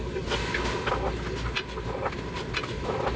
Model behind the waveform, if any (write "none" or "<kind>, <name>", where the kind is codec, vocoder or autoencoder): none